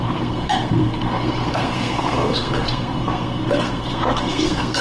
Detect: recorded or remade remade